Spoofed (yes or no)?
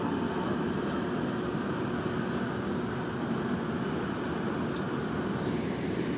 no